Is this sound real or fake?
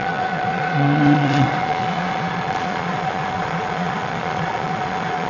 fake